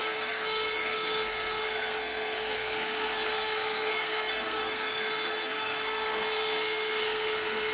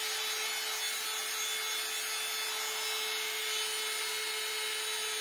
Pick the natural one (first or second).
second